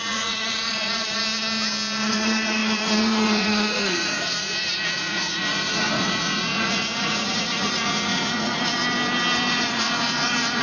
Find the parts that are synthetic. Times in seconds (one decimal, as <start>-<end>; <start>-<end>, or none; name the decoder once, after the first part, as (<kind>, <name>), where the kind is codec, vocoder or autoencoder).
0.0-1.2 (vocoder, Vocos); 2.1-8.8; 9.5-10.6